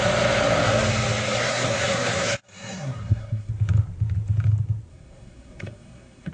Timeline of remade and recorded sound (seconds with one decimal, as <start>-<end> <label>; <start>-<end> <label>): 0.0-1.4 recorded; 1.4-3.5 remade; 3.5-4.9 recorded; 4.9-6.3 remade